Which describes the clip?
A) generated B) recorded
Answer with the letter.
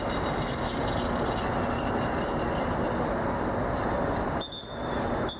B